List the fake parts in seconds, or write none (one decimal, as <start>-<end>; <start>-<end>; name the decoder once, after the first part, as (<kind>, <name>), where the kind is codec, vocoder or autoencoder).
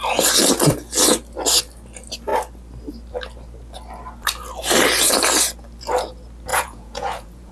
6.5-7.5 (vocoder, Vocos)